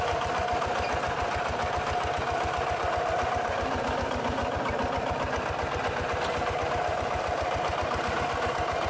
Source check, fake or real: real